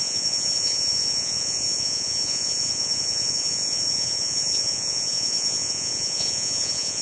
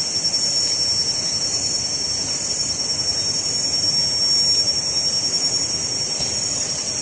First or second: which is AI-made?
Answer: first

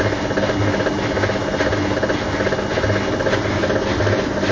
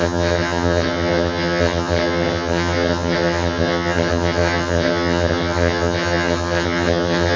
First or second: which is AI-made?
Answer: second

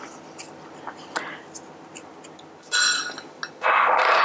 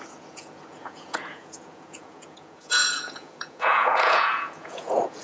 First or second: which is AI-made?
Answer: second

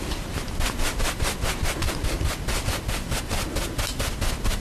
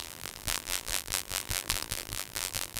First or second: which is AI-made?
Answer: second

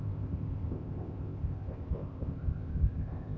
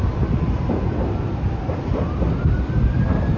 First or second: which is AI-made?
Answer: first